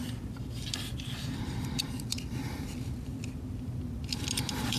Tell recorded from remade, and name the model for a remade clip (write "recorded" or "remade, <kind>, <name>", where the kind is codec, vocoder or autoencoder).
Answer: remade, vocoder, BigVGAN v2